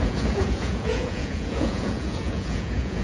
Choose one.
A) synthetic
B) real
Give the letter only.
A